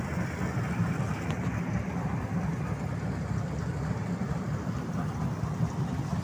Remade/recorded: recorded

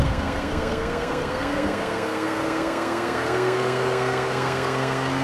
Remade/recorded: remade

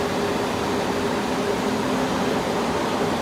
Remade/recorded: recorded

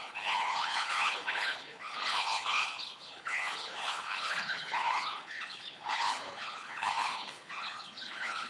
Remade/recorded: remade